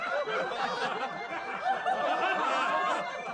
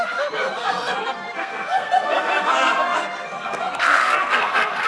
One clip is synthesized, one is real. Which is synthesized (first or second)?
second